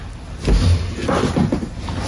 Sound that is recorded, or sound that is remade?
recorded